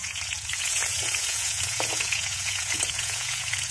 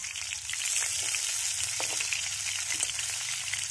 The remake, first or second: first